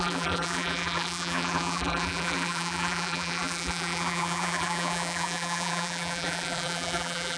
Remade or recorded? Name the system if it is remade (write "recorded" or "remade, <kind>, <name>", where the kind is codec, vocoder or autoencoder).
remade, vocoder, BigVGAN v2